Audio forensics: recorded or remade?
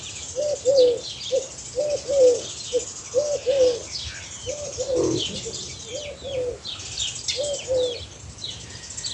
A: recorded